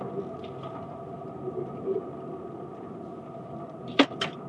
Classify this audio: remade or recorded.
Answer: recorded